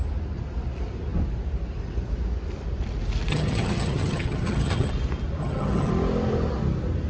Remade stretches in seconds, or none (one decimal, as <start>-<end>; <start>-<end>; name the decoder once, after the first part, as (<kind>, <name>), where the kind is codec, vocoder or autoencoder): 3.3-4.9 (vocoder, HiFi-GAN); 5.4-5.9

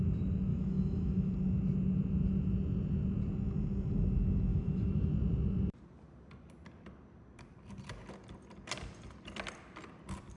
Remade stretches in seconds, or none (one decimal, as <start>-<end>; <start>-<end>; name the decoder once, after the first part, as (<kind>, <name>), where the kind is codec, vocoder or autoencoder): 0.5-1.3 (autoencoder, DAC-VAE); 4.5-5.1